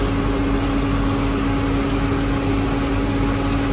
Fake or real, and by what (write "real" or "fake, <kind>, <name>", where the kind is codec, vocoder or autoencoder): real